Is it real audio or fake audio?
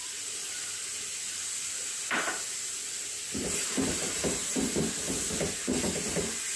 real